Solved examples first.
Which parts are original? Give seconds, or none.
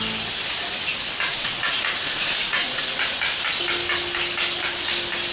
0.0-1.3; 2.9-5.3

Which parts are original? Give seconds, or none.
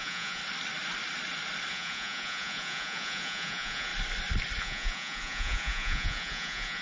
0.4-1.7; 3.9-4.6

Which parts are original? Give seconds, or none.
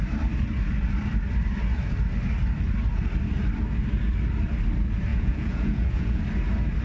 0.0-5.1; 6.2-6.8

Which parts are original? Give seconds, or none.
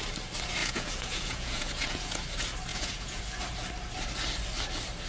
0.0-0.6; 2.2-2.7; 3.2-5.1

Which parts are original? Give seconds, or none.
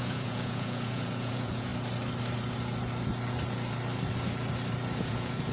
1.7-5.0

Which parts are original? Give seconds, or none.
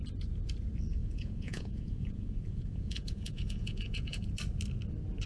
0.0-1.0; 4.2-5.3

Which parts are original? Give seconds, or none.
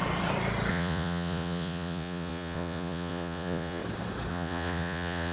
0.0-0.7; 3.8-4.3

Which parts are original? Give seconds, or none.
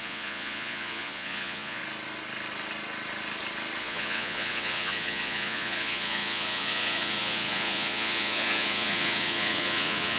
1.8-3.8